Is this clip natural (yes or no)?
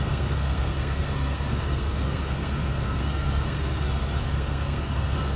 no